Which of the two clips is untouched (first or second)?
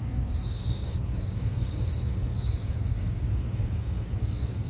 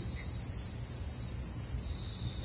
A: second